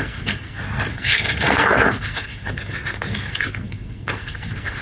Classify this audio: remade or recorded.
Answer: remade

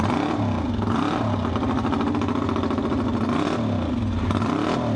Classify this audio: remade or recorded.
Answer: recorded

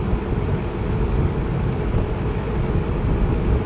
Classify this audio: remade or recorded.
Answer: recorded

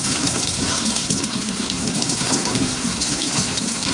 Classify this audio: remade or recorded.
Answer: remade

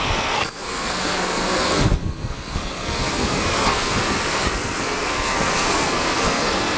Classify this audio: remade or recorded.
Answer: remade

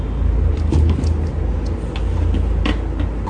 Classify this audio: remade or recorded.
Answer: recorded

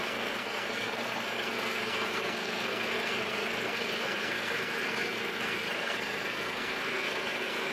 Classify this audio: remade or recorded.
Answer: remade